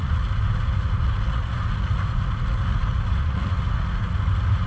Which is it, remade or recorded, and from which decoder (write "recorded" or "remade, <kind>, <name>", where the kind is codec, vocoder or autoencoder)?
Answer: remade, vocoder, Vocos